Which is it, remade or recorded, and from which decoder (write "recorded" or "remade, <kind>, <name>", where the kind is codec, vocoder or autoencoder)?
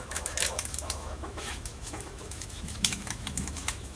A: remade, autoencoder, DAC-VAE